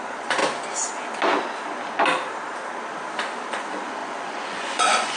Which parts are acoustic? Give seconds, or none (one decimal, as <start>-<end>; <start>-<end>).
0.4-3.5